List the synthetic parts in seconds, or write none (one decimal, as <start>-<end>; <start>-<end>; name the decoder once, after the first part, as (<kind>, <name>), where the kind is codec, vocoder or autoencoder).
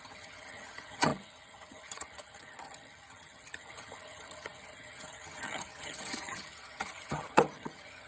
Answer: 0.0-8.1 (vocoder, HiFi-GAN)